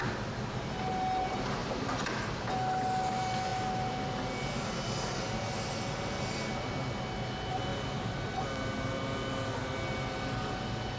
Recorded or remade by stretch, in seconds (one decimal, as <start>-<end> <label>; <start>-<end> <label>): 0.0-1.6 recorded; 1.6-2.3 remade; 2.3-11.0 recorded